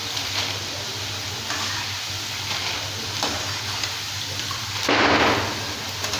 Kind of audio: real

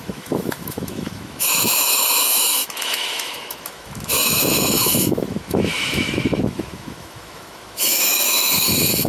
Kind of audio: fake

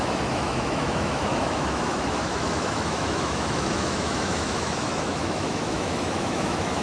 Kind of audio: fake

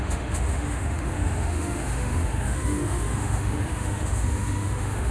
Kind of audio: fake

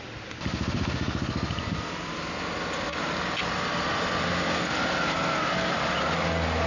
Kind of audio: real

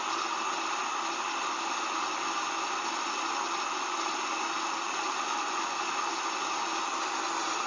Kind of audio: real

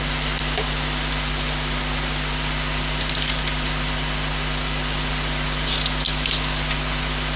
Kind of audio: real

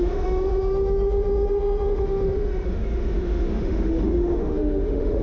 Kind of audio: fake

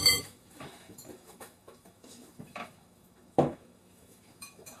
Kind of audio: fake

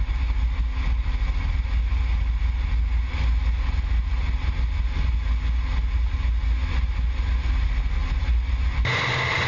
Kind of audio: real